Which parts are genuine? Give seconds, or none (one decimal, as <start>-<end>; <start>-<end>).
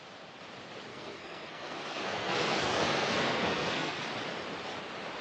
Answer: 0.0-0.9; 4.0-5.2